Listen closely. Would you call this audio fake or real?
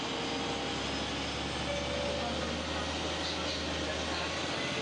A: real